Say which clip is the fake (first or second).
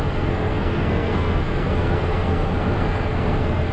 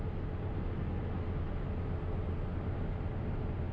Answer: first